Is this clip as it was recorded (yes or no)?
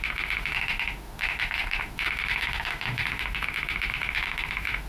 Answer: no